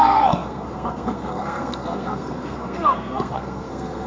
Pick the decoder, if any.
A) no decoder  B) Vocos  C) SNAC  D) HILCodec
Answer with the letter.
C